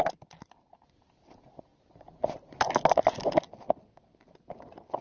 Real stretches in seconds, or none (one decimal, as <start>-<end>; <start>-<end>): 0.0-5.0